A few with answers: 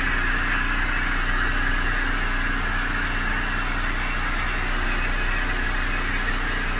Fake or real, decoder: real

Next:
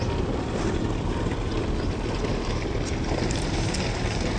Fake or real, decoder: real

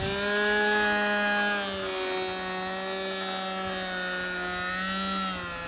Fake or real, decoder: real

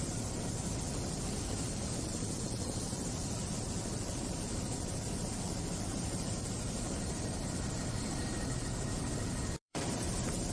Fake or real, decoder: fake, vocoder, BigVGAN v2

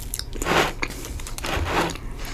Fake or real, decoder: real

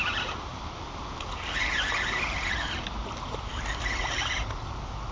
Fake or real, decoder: real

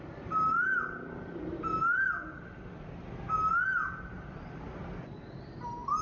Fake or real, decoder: real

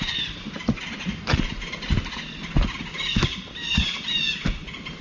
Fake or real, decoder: real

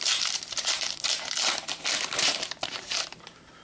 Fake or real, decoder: fake, vocoder, BigVGAN v2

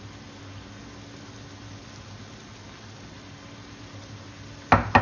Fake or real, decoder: real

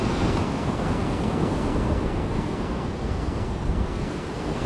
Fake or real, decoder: fake, codec, SNAC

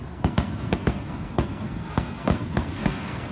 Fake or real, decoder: fake, codec, SNAC